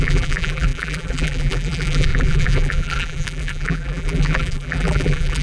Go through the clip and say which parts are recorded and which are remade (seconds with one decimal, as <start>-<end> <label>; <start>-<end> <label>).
0.0-5.4 remade